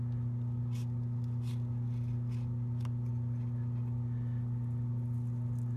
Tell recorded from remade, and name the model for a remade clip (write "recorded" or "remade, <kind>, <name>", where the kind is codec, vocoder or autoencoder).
recorded